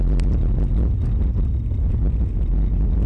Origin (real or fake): real